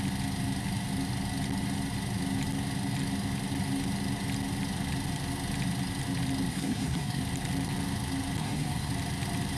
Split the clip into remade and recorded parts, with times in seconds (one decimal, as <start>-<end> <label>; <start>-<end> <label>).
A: 0.0-6.5 recorded; 6.5-7.2 remade; 7.2-8.4 recorded; 8.4-8.9 remade; 8.9-9.6 recorded